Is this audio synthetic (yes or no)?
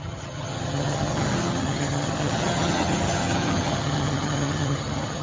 yes